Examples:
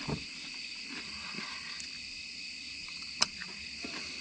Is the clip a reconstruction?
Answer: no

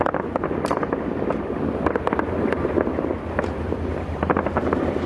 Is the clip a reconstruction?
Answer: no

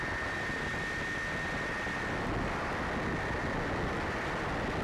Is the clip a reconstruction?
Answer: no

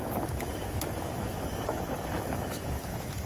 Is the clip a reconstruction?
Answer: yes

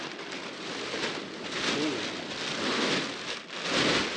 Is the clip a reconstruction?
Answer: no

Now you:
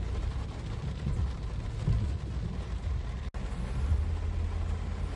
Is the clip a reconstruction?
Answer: no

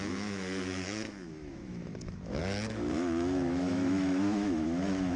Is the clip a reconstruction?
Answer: yes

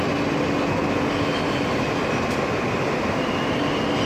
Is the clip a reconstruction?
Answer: no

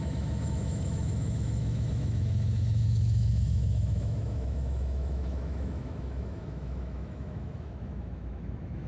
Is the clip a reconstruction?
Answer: yes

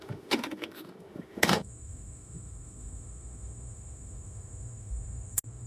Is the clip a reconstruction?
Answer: yes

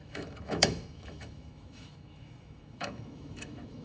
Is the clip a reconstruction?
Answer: yes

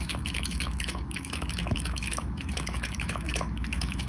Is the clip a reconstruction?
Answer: yes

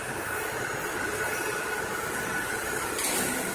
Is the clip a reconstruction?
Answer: no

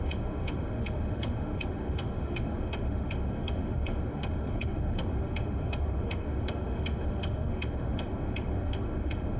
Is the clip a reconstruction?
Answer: yes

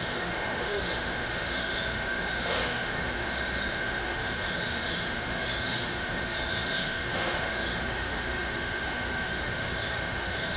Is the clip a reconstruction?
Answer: yes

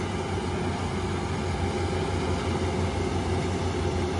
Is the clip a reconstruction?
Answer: no